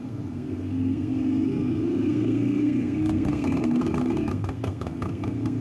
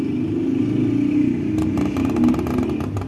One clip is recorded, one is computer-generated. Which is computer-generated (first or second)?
first